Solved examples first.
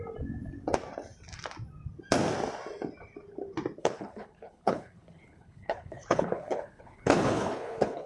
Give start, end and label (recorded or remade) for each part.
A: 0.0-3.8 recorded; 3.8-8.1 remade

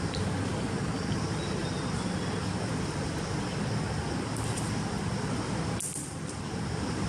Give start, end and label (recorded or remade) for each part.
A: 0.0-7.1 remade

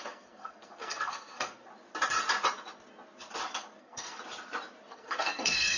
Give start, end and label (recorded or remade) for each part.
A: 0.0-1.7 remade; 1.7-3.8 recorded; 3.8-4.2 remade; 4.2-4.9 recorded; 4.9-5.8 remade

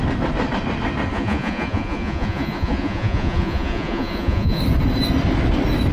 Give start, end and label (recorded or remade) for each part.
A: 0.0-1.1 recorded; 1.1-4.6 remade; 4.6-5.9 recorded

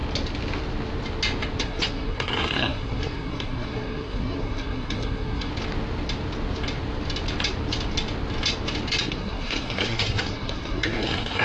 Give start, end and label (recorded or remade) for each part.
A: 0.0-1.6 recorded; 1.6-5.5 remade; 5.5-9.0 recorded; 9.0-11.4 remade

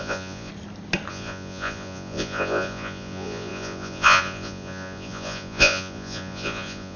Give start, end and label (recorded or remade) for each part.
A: 0.0-0.5 remade; 0.5-1.1 recorded; 1.1-7.0 remade